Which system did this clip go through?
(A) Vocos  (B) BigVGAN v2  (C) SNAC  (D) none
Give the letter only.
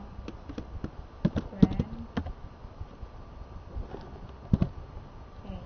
D